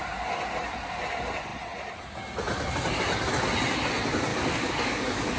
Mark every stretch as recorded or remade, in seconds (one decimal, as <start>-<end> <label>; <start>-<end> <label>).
0.0-4.3 recorded; 4.3-5.4 remade